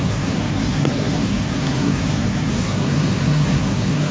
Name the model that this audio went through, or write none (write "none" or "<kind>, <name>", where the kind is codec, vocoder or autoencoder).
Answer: codec, SNAC